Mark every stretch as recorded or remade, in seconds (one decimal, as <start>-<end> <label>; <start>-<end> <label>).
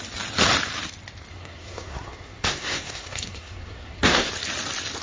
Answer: 0.0-1.3 recorded; 1.3-4.3 remade; 4.3-5.0 recorded